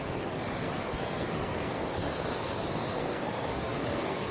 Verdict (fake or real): fake